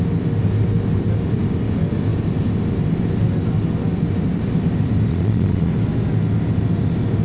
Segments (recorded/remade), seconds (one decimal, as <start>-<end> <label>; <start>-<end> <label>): 0.0-5.1 recorded; 5.1-5.7 remade; 5.7-7.2 recorded